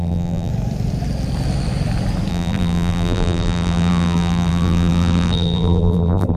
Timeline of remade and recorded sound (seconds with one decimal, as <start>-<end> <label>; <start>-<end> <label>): 0.0-0.5 remade; 0.5-2.3 recorded; 2.3-6.4 remade